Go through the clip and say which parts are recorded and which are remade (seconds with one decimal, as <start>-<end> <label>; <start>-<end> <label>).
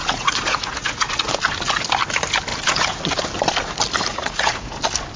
0.0-1.3 remade; 1.3-2.5 recorded; 2.5-3.0 remade; 3.0-4.1 recorded; 4.1-4.8 remade; 4.8-5.2 recorded